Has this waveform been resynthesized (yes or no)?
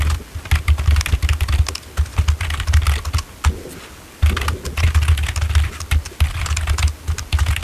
no